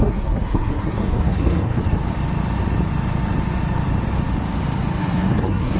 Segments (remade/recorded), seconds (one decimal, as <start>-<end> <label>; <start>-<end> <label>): 0.0-1.8 remade; 1.8-5.0 recorded; 5.0-5.8 remade

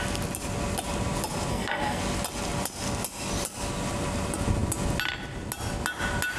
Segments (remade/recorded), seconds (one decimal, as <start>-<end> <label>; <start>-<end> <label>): 0.0-1.5 recorded; 1.5-2.0 remade; 2.0-6.4 recorded

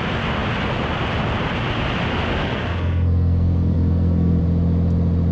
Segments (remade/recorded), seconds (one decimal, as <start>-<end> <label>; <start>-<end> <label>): 0.0-2.4 recorded; 2.4-4.4 remade; 4.4-5.3 recorded

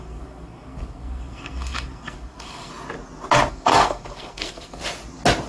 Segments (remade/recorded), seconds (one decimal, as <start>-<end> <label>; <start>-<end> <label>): 0.0-2.7 remade; 2.7-3.5 recorded; 3.5-4.8 remade; 4.8-5.5 recorded

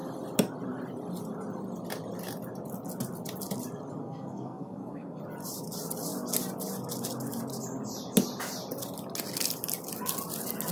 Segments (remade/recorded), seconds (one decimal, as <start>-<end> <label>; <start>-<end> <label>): 0.0-4.0 recorded; 4.0-5.2 remade; 5.2-10.7 recorded

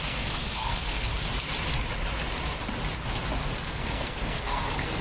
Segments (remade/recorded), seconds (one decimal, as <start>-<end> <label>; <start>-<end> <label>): 0.0-1.1 remade; 1.1-3.7 recorded; 3.7-5.0 remade

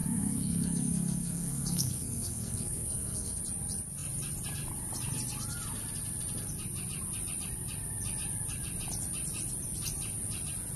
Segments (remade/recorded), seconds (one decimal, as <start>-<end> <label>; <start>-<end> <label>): 0.0-3.4 remade; 3.4-10.8 recorded

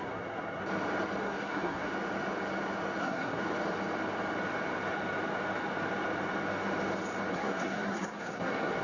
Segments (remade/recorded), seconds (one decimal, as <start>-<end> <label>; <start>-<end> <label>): 0.0-0.6 remade; 0.6-1.2 recorded; 1.2-1.9 remade; 1.9-3.0 recorded; 3.0-3.4 remade; 3.4-7.3 recorded; 7.3-8.8 remade